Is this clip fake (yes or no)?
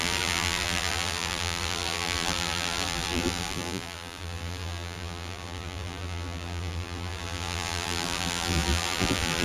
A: yes